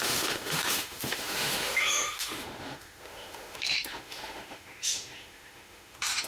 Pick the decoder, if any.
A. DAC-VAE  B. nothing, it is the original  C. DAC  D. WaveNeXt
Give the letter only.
A